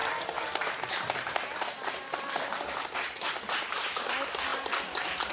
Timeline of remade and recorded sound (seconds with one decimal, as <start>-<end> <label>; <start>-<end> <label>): 0.0-5.3 recorded